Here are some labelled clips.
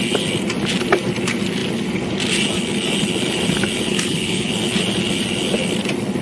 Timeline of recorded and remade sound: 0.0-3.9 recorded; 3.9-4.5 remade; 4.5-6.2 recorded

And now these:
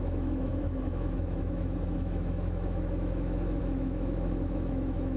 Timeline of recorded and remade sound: 0.0-5.2 remade

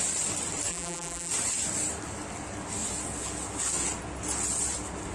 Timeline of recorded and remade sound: 0.0-0.7 recorded; 0.7-1.3 remade; 1.3-5.1 recorded

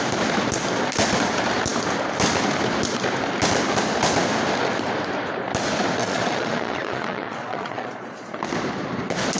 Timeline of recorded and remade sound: 0.0-6.0 recorded; 6.0-8.4 remade; 8.4-9.4 recorded

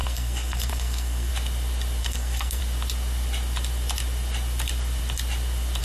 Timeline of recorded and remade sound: 0.0-1.3 remade; 1.3-2.0 recorded; 2.0-2.6 remade; 2.6-5.8 recorded

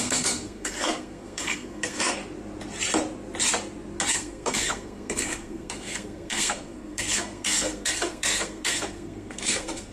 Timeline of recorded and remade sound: 0.0-2.2 remade; 2.2-4.1 recorded; 4.1-9.9 remade

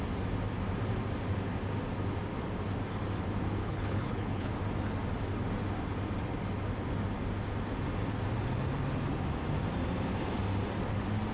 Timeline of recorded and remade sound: 0.0-3.6 recorded; 3.6-4.5 remade; 4.5-11.3 recorded